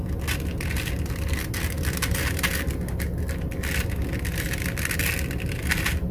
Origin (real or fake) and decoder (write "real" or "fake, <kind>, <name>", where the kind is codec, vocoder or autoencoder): real